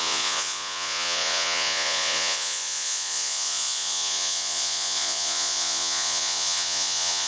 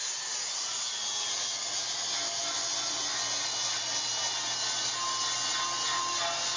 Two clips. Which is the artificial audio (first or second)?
first